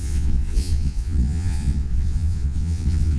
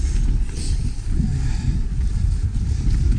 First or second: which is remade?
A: first